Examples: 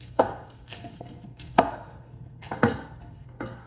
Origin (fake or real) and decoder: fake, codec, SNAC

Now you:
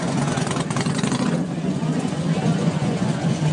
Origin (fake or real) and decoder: fake, vocoder, Vocos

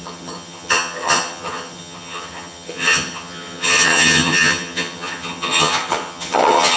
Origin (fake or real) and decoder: fake, vocoder, HiFi-GAN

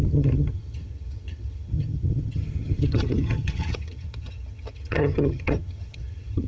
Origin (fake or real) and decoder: fake, vocoder, HiFi-GAN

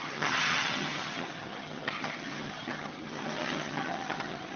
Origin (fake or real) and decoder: fake, vocoder, HiFi-GAN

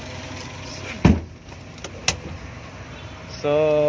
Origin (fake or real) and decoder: real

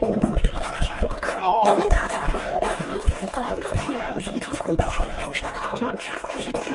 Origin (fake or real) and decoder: fake, codec, SNAC